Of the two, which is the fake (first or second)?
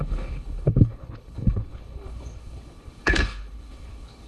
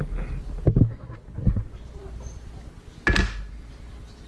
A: first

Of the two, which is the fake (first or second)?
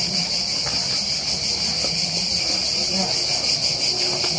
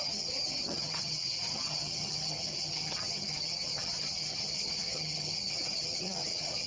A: second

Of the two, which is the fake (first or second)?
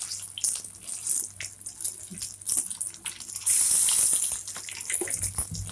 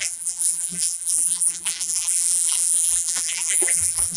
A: second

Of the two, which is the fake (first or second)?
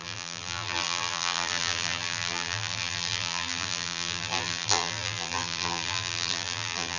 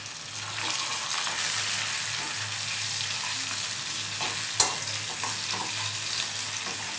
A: first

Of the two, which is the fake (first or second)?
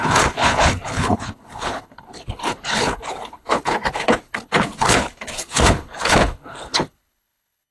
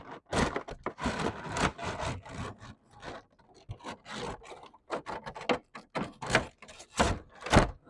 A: first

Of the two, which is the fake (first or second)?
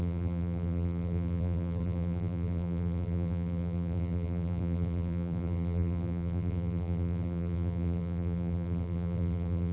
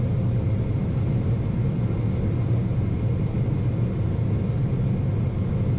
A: first